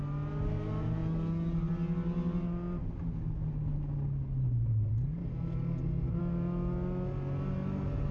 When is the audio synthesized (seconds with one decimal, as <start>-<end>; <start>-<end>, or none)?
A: none